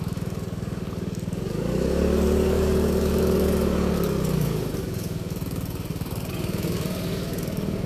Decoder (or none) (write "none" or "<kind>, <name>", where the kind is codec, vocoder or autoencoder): codec, DAC